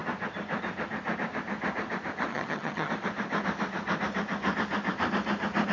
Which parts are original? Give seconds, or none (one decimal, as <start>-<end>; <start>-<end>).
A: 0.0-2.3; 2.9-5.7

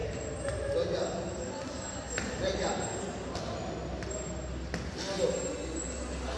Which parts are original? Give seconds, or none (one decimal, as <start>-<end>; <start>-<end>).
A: 0.0-6.4

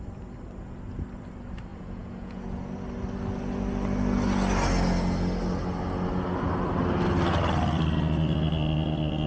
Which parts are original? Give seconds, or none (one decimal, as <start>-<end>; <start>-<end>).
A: 0.0-1.7; 2.6-9.3

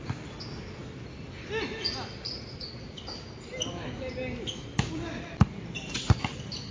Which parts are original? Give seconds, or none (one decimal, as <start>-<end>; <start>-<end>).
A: 0.0-6.7

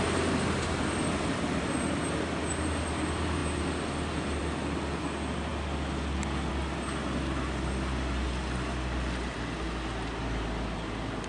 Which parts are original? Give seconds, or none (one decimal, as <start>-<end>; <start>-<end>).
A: 0.0-11.3

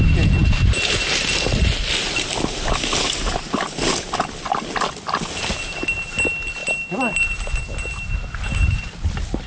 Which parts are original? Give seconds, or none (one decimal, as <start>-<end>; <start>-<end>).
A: 0.0-9.5

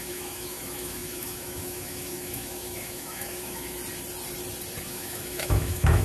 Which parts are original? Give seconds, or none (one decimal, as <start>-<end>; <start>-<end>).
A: 3.8-4.8

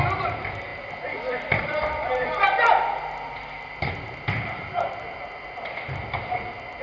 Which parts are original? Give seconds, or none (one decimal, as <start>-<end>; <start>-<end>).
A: 0.0-6.8